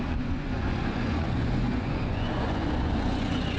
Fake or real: fake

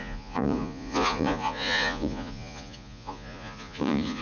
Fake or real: fake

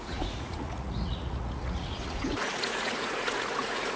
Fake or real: fake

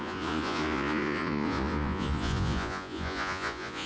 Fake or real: fake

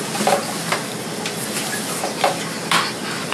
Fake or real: real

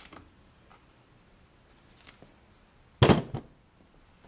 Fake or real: real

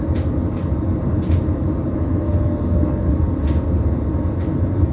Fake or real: real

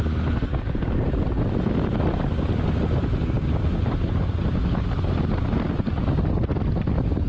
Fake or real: real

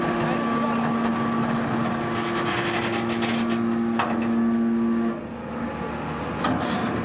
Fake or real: real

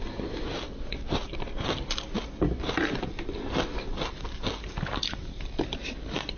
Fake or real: real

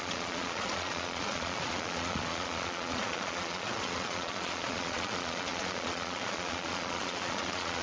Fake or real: fake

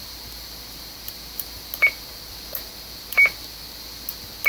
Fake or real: real